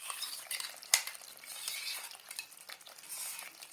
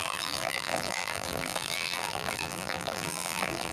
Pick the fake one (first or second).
second